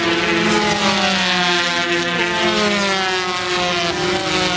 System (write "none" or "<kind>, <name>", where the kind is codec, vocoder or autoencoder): none